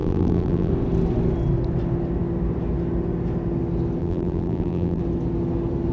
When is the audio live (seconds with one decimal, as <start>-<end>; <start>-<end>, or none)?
0.7-4.0; 5.0-5.9